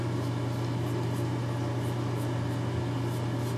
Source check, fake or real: real